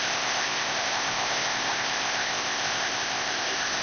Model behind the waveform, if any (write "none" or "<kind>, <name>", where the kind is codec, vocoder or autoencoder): codec, ZipCodec